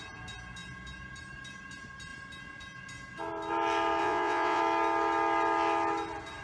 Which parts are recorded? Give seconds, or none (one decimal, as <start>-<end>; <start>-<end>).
0.0-4.0; 4.6-6.4